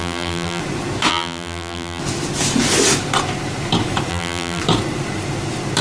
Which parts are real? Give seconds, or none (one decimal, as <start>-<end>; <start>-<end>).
0.6-1.1; 2.0-4.1; 4.6-5.8